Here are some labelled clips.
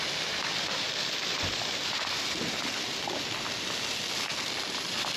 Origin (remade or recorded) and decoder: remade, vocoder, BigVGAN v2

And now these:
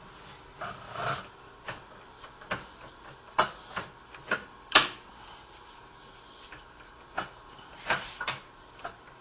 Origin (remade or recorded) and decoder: remade, vocoder, BigVGAN v2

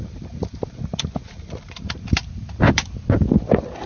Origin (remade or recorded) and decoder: remade, vocoder, BigVGAN v2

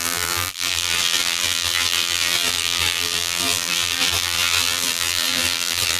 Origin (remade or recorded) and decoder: remade, vocoder, BigVGAN v2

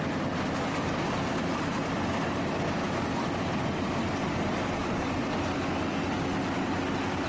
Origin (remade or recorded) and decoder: recorded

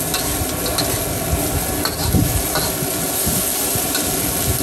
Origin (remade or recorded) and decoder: recorded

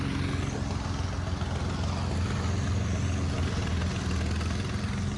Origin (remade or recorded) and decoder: recorded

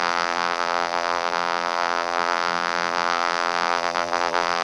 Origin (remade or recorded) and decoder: remade, vocoder, BigVGAN v2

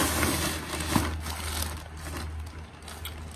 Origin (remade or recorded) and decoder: recorded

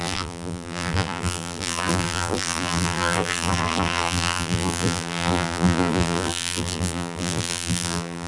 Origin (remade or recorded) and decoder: remade, vocoder, BigVGAN v2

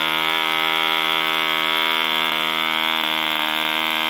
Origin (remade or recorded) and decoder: recorded